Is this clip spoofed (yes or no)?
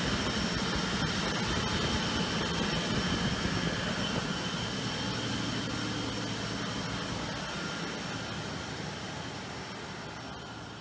no